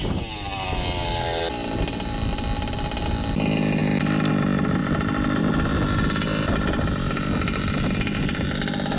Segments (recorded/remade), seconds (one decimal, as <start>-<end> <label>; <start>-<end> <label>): 0.0-9.0 recorded

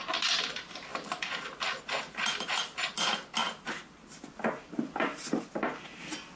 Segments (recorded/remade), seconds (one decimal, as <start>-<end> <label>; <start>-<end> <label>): 0.0-6.4 recorded